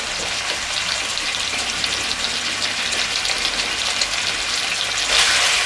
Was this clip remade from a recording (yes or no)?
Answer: no